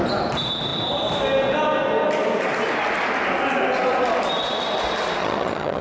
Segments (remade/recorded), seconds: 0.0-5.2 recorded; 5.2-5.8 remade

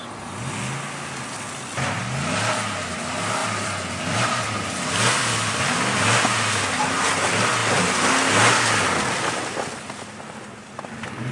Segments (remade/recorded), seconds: 0.0-3.4 recorded; 3.4-5.6 remade; 5.6-11.3 recorded

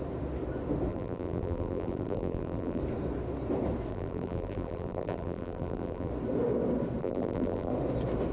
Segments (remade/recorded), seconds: 0.0-0.9 recorded; 0.9-2.8 remade; 2.8-3.9 recorded; 3.9-6.1 remade; 6.1-7.0 recorded; 7.0-7.7 remade; 7.7-8.3 recorded